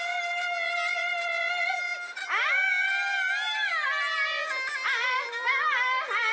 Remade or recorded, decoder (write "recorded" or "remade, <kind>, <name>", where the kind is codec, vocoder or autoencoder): recorded